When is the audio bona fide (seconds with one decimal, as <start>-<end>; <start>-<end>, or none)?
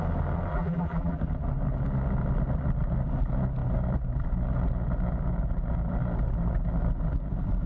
0.0-0.5; 1.2-7.7